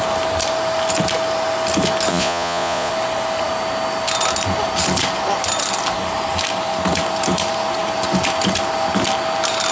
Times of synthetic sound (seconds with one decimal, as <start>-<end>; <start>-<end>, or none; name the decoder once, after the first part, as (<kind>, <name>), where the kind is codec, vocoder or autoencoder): 2.1-2.9 (vocoder, Vocos)